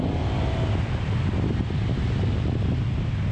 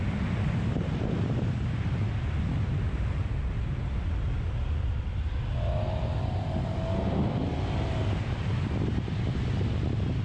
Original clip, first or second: first